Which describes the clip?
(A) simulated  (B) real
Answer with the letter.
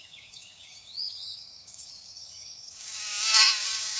A